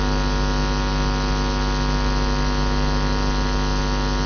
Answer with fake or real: real